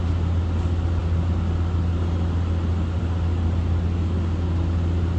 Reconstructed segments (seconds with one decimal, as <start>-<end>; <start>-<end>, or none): none

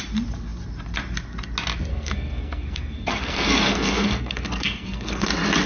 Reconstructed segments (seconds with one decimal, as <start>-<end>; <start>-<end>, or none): 1.9-5.3

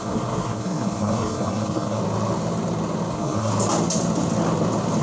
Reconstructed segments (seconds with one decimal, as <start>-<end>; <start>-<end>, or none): 0.0-2.0; 3.1-3.5

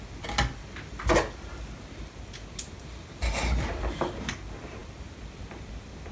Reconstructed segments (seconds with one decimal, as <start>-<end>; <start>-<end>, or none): none